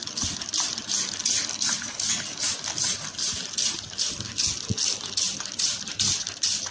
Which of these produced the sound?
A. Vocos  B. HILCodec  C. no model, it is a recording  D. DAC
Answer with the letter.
C